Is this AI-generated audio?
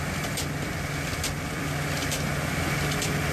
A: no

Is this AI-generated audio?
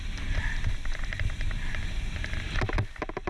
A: no